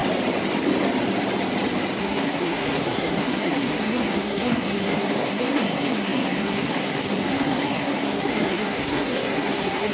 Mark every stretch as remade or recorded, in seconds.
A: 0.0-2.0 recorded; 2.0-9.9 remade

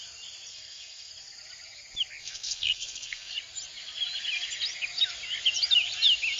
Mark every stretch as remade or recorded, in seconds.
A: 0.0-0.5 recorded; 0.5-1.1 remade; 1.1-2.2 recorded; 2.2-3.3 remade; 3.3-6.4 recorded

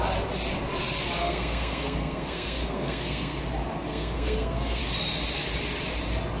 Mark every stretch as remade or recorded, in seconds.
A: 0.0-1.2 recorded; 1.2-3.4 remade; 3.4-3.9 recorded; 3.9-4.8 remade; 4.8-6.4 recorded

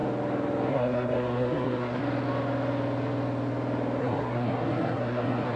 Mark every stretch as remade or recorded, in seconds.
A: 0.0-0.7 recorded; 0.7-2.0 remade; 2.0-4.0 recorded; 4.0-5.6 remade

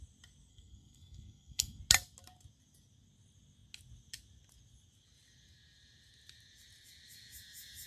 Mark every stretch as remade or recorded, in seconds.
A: 0.0-0.5 recorded; 0.5-1.8 remade; 1.8-7.9 recorded

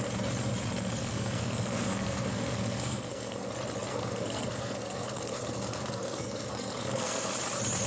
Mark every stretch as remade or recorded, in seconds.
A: 0.0-1.0 recorded; 1.0-3.5 remade; 3.5-3.9 recorded; 3.9-7.3 remade; 7.3-7.9 recorded

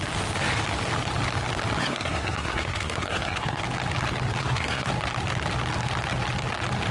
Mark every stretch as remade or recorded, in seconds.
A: 0.0-1.8 recorded; 1.8-3.6 remade; 3.6-4.4 recorded; 4.4-4.9 remade; 4.9-6.9 recorded

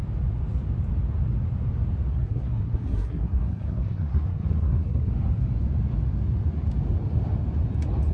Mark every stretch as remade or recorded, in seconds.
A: 0.0-2.1 recorded; 2.1-5.1 remade; 5.1-8.1 recorded